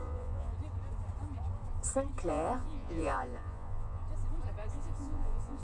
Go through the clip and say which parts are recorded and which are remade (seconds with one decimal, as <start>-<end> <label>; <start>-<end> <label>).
0.0-0.5 remade; 0.5-2.3 recorded; 2.3-4.0 remade; 4.0-4.7 recorded; 4.7-5.6 remade